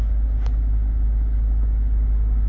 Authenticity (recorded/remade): recorded